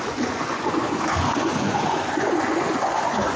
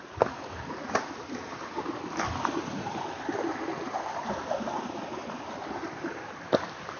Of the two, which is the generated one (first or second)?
first